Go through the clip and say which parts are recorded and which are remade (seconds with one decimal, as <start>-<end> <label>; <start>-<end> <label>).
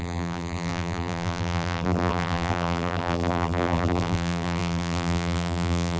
0.0-6.0 remade